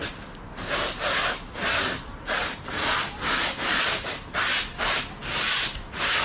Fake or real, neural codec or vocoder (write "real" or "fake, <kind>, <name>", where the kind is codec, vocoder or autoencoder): real